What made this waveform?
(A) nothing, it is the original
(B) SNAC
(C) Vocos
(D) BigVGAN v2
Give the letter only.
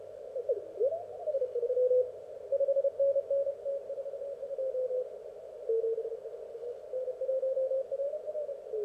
A